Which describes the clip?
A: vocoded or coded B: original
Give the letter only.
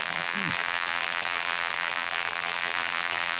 A